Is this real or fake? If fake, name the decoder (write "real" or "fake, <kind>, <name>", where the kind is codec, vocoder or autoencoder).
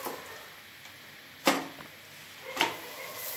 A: real